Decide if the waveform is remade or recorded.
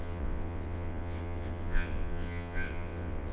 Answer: remade